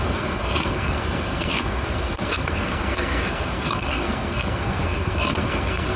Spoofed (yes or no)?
yes